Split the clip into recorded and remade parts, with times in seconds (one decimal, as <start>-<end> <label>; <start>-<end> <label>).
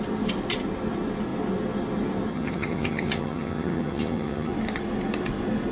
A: 0.0-2.3 recorded; 2.3-4.5 remade; 4.5-5.7 recorded